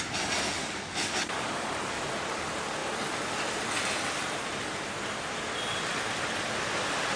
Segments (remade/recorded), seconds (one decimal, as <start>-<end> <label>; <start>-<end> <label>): 0.0-0.6 recorded; 0.6-2.1 remade; 2.1-7.2 recorded